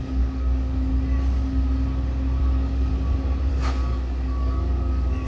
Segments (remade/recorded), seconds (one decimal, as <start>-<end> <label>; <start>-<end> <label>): 0.0-0.9 remade; 0.9-2.4 recorded; 2.4-2.9 remade; 2.9-3.5 recorded; 3.5-5.3 remade